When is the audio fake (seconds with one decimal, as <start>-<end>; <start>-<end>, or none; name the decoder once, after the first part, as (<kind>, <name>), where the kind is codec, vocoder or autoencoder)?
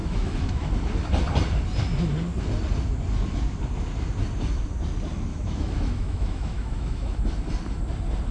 0.0-0.7 (autoencoder, DAC-VAE); 5.3-7.2